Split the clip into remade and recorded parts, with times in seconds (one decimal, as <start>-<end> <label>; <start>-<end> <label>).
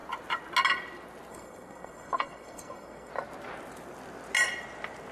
0.0-1.3 recorded; 1.3-3.1 remade; 3.1-5.1 recorded